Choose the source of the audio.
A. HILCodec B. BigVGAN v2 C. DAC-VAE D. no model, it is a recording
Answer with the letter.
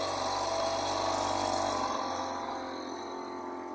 D